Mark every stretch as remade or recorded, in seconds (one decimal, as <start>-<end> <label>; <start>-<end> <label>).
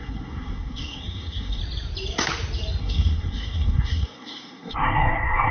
0.0-1.6 remade; 1.6-2.8 recorded; 2.8-5.5 remade